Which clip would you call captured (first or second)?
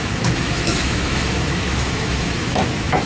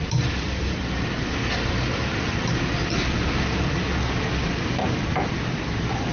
second